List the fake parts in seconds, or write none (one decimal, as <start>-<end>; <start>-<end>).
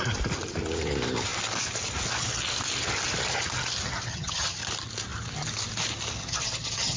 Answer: 4.1-4.6; 6.2-7.0